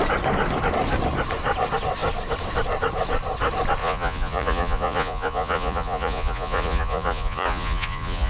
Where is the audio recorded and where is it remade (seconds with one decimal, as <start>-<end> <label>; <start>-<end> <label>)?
0.0-3.8 recorded; 3.8-8.3 remade